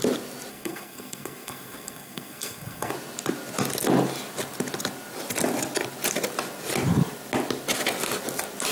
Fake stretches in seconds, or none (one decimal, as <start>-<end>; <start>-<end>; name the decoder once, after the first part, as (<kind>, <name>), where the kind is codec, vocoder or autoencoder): 0.5-2.9 (codec, SNAC)